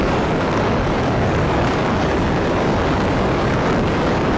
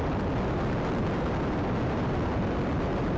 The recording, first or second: second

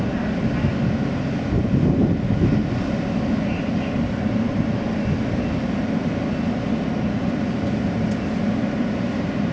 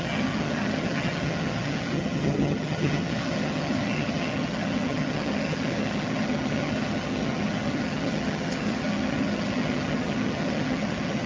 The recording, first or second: first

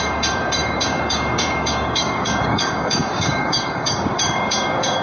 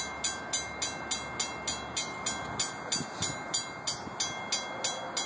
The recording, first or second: second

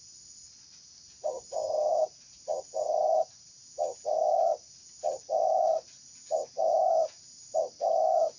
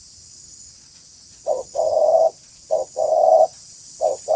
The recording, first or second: first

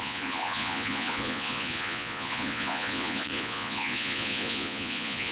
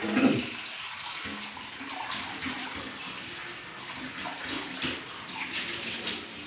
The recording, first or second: second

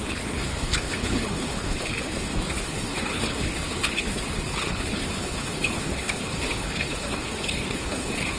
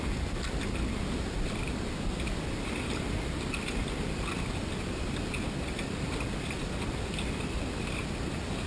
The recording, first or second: second